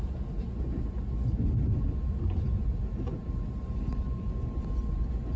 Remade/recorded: recorded